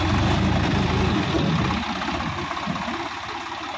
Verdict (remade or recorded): recorded